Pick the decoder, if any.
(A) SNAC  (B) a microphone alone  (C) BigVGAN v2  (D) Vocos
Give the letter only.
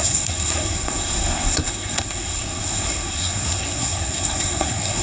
A